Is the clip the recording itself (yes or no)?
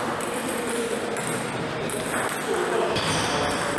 yes